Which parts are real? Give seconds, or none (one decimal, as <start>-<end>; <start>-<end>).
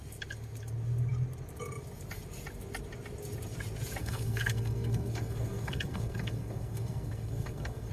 0.0-4.0